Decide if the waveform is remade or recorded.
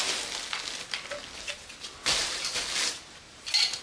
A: recorded